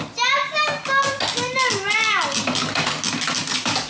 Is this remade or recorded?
recorded